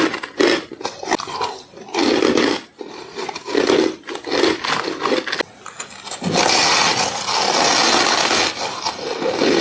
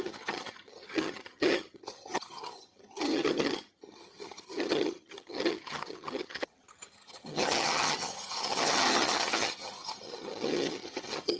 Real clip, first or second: first